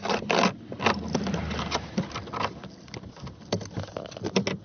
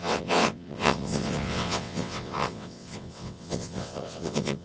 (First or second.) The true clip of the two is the first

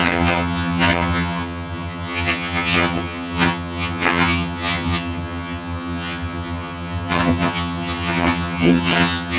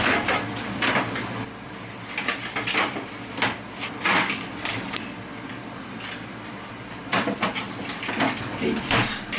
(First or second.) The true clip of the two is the second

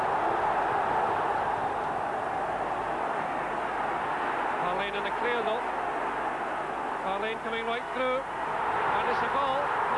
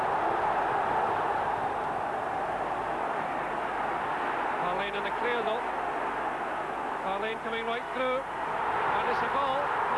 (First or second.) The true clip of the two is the first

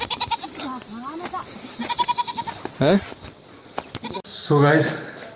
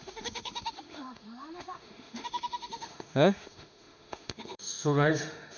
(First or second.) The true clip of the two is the first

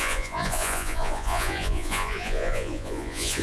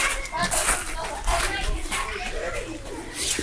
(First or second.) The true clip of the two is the second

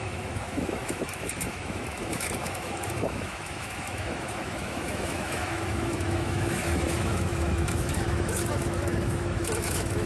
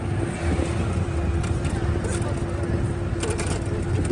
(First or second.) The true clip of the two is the second